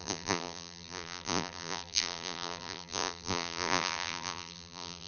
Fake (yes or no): yes